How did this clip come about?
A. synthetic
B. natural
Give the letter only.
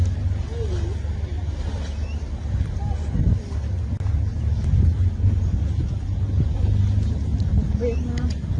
B